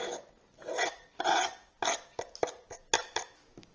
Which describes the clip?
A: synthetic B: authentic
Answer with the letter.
B